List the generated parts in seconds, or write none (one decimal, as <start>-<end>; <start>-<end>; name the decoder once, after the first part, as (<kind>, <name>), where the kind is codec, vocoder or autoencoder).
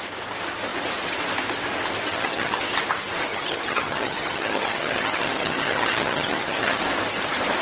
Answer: 2.1-2.6 (vocoder, HiFi-GAN); 3.3-6.8